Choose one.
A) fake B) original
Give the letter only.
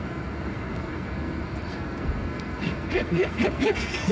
A